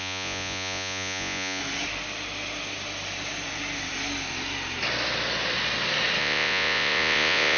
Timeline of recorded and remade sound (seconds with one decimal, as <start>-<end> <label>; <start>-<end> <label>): 0.0-1.6 remade; 1.6-6.2 recorded; 6.2-7.6 remade